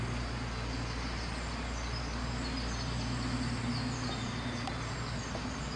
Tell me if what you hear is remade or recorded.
recorded